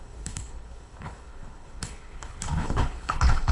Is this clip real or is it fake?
fake